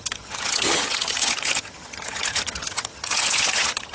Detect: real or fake fake